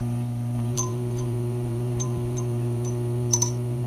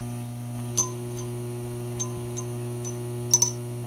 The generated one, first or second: first